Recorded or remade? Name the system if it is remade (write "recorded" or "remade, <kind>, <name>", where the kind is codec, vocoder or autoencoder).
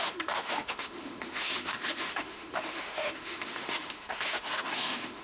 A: remade, autoencoder, DAC-VAE